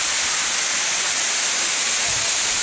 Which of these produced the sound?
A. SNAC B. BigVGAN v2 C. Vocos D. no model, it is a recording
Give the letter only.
D